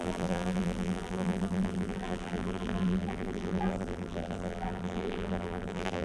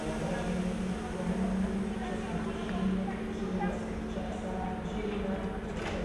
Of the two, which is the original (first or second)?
second